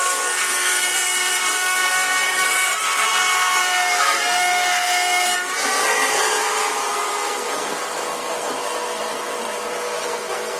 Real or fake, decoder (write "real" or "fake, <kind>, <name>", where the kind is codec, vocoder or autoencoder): fake, codec, SNAC